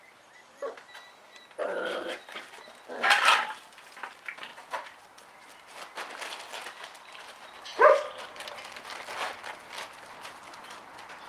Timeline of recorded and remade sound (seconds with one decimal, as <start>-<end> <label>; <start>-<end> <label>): 0.0-1.6 recorded; 1.6-2.8 remade; 2.8-6.6 recorded; 6.6-7.2 remade; 7.2-11.3 recorded